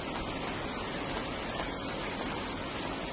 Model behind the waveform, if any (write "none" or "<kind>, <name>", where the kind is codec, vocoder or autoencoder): none